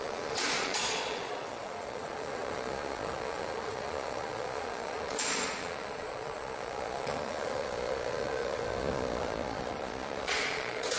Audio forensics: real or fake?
fake